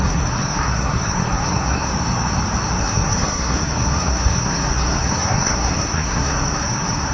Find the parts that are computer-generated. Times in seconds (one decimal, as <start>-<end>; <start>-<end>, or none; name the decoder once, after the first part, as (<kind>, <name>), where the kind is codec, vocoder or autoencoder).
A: 0.0-1.9 (codec, SNAC); 2.8-7.1